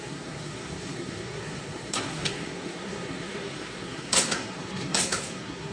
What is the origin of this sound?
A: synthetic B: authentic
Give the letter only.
A